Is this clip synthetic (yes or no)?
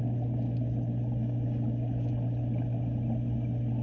no